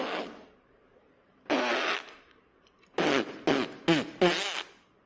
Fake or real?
real